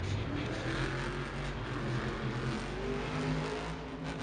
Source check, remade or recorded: recorded